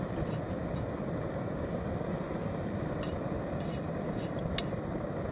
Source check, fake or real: real